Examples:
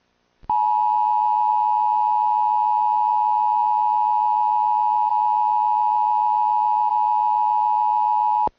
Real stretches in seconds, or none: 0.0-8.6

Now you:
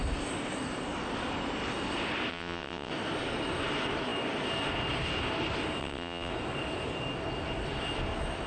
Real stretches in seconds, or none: 0.0-2.3; 2.9-5.8; 6.3-8.5

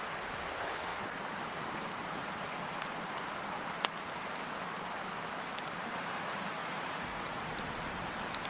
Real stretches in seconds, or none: 0.0-2.0; 3.3-6.6; 7.4-8.5

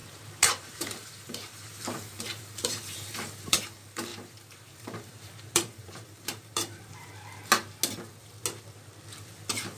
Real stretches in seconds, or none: 7.1-9.8